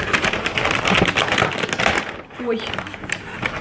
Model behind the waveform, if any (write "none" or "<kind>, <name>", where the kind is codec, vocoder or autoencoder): none